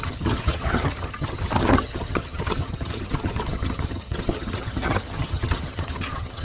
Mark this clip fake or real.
fake